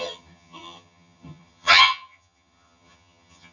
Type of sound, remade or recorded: remade